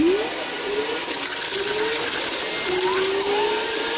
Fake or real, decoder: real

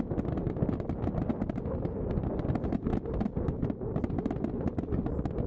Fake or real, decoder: real